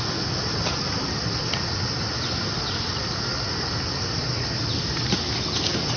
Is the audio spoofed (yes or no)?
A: no